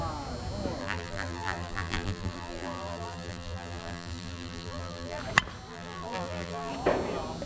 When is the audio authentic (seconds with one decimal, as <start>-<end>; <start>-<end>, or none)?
0.0-0.8; 5.2-5.7; 6.7-7.5